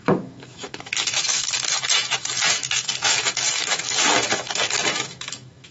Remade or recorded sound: remade